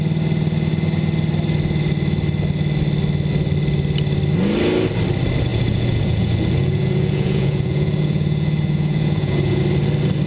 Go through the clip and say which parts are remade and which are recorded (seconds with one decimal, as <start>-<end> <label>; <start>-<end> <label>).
0.0-5.5 recorded; 5.5-9.6 remade; 9.6-10.3 recorded